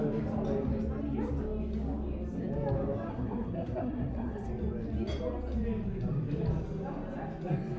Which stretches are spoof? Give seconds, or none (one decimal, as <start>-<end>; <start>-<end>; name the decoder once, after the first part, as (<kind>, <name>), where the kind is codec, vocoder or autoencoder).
3.1-4.5 (codec, SNAC)